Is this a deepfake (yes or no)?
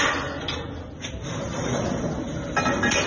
no